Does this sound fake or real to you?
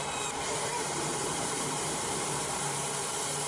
fake